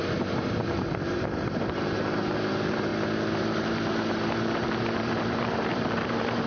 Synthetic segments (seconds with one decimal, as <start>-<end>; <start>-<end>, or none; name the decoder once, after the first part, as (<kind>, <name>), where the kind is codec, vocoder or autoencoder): 0.0-2.9 (vocoder, BigVGAN v2); 3.4-6.5